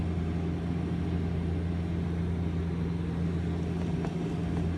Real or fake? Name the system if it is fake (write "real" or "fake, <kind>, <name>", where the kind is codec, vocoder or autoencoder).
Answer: real